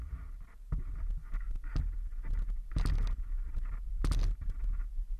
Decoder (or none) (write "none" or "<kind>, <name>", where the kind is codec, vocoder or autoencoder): none